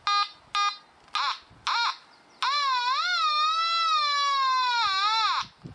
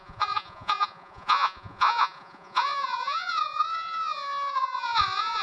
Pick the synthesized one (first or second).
second